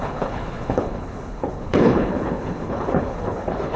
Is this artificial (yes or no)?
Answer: yes